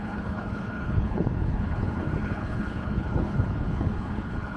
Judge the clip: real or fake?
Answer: fake